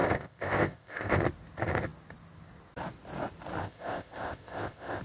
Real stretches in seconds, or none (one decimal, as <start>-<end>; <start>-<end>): 1.2-3.6